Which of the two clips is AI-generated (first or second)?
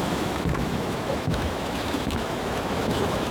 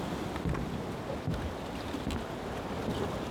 first